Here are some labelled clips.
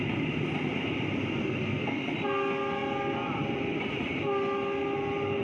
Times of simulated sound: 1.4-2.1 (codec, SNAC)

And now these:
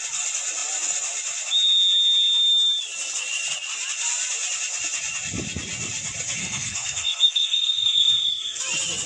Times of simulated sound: 6.4-8.6 (codec, SNAC)

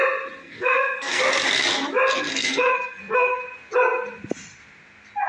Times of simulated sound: 0.4-1.2 (codec, SNAC); 2.3-3.4

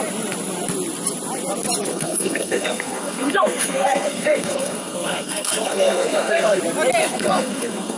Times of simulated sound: 1.9-6.6 (codec, SNAC); 7.0-8.0

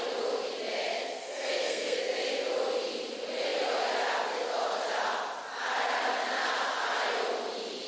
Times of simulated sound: 1.0-2.0 (codec, SNAC)

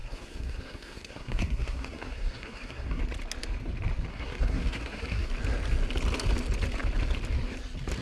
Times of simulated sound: 0.0-3.0 (codec, SNAC); 4.1-5.3

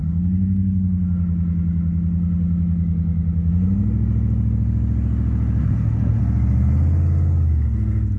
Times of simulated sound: 5.6-6.2 (codec, SNAC)

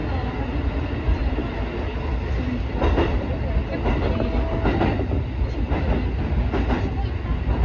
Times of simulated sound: none